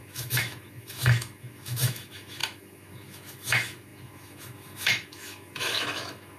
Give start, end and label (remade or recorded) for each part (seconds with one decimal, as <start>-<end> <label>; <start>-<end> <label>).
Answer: 0.0-6.4 remade